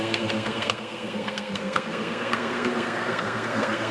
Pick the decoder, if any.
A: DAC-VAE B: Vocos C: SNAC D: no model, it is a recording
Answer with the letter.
C